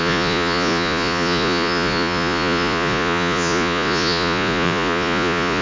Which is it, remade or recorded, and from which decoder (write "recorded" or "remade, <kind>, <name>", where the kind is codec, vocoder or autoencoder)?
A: remade, vocoder, Vocos